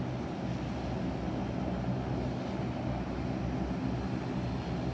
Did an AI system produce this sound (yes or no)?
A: no